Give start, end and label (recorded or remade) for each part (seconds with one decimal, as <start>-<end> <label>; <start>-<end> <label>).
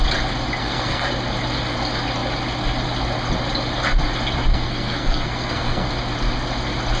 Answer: 0.0-0.6 recorded; 0.6-1.1 remade; 1.1-4.5 recorded; 4.5-5.9 remade; 5.9-7.0 recorded